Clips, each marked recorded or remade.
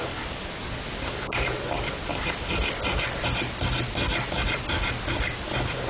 recorded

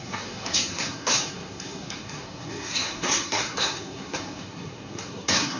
remade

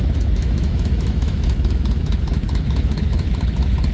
remade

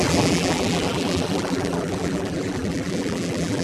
remade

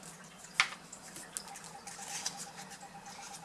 recorded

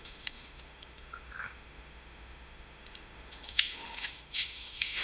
remade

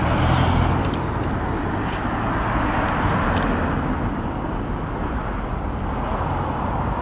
recorded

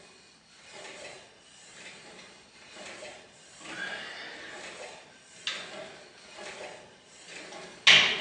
recorded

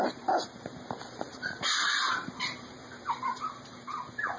remade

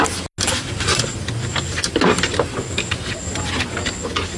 recorded